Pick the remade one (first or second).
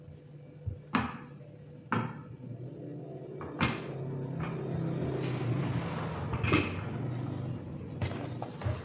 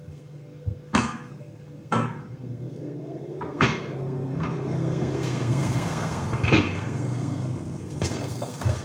second